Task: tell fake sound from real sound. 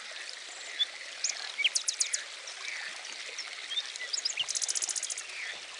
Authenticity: real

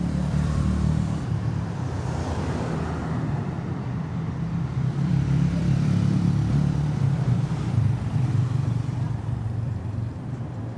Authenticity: fake